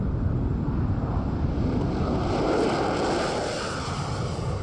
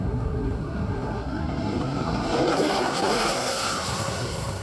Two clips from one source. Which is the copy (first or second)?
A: second